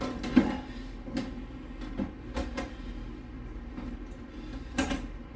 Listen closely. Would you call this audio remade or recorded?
recorded